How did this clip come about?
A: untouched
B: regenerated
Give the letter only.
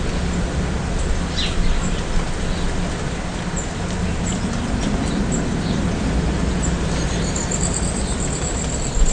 A